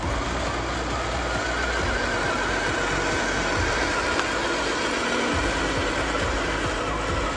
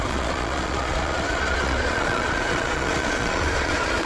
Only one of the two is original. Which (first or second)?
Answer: first